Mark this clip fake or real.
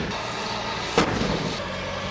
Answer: real